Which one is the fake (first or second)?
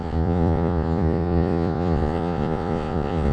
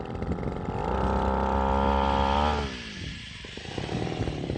first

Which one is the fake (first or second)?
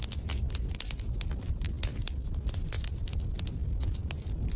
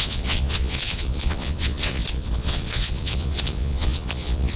second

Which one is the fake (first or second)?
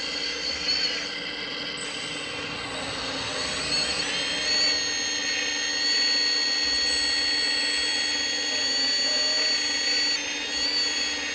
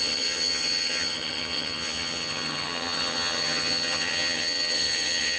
second